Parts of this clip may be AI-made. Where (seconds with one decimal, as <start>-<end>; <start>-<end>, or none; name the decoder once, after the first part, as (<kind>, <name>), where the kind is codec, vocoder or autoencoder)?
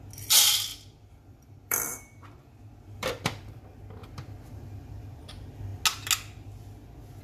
0.7-3.6 (vocoder, BigVGAN v2); 4.0-5.3